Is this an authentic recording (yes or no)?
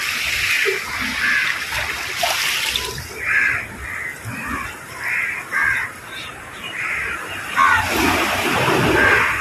yes